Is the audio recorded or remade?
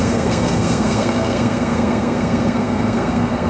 remade